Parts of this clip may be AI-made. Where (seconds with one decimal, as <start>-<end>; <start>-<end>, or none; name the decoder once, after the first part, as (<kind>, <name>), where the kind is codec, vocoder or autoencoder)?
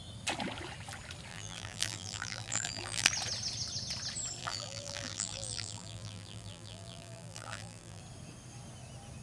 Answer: 1.3-3.1 (vocoder, BigVGAN v2); 4.4-8.0